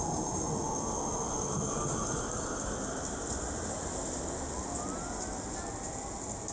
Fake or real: real